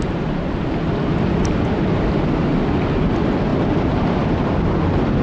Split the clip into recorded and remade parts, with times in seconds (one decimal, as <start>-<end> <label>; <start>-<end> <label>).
0.0-3.5 recorded; 3.5-4.7 remade; 4.7-5.2 recorded